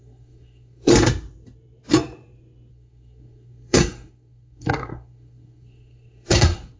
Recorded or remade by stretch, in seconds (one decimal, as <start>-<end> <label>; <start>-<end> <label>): 0.0-0.9 remade; 0.9-2.7 recorded; 2.7-6.8 remade